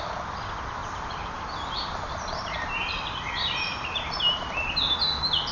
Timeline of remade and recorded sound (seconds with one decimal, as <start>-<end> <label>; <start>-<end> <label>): 0.0-0.8 recorded; 0.8-4.1 remade; 4.1-5.5 recorded